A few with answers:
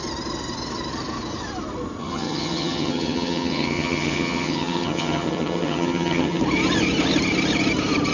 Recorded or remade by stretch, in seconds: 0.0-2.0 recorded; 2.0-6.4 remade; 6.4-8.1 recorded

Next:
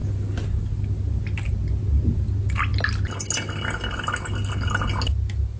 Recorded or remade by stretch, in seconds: 0.0-5.6 recorded

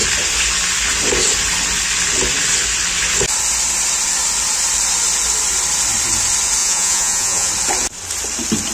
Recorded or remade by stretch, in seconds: 0.0-6.6 recorded; 6.6-7.5 remade; 7.5-8.7 recorded

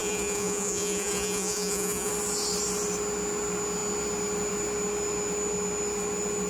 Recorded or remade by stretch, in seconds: 0.0-2.1 remade; 2.1-6.5 recorded

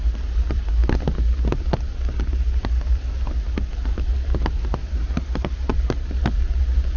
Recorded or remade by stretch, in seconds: 0.0-7.0 recorded

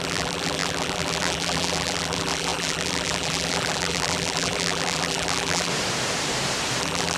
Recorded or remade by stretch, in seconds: 0.0-5.7 remade; 5.7-6.8 recorded; 6.8-7.2 remade